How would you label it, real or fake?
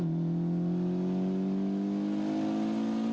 real